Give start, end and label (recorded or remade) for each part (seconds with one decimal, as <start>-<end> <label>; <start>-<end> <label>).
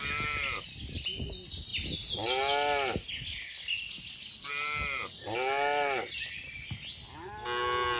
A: 0.0-8.0 recorded